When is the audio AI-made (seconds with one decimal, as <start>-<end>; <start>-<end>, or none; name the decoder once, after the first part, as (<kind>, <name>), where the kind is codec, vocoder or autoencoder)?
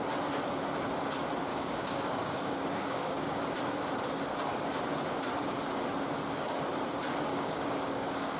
1.5-3.4 (codec, DAC); 7.3-8.4